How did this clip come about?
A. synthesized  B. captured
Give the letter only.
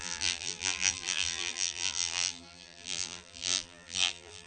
A